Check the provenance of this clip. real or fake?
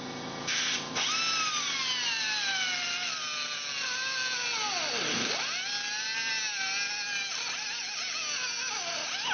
real